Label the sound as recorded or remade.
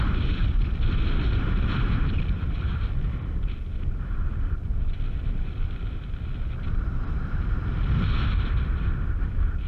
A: remade